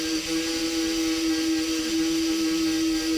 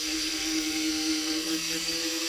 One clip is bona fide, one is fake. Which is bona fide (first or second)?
first